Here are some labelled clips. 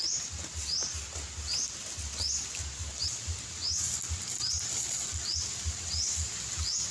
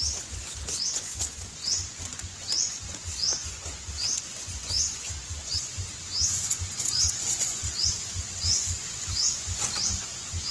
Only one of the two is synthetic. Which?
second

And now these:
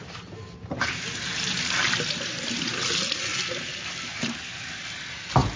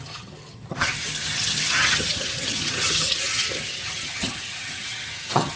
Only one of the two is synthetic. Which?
second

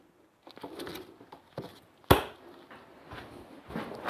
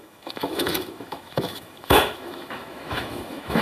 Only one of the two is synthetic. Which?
second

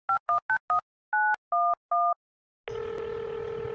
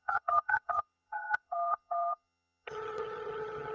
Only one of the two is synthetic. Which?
second